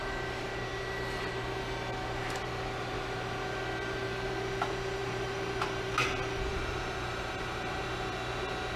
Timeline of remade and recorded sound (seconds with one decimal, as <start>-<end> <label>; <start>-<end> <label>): 0.0-5.0 recorded; 5.0-5.9 remade; 5.9-6.5 recorded; 6.5-7.8 remade; 7.8-8.8 recorded